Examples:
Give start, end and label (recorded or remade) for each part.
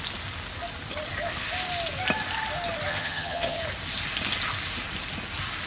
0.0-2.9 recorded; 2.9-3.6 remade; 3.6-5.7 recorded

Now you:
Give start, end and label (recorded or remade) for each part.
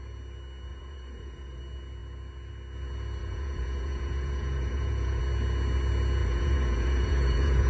0.0-0.7 recorded; 0.7-1.6 remade; 1.6-3.2 recorded; 3.2-5.2 remade; 5.2-6.2 recorded; 6.2-7.7 remade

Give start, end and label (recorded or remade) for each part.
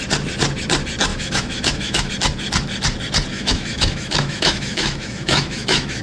0.0-1.1 recorded; 1.1-2.1 remade; 2.1-3.3 recorded; 3.3-6.0 remade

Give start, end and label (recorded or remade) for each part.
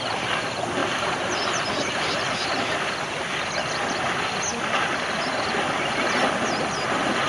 0.0-0.8 recorded; 0.8-1.5 remade; 1.5-7.3 recorded